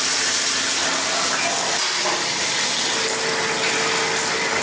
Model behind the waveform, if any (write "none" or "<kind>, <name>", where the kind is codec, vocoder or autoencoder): none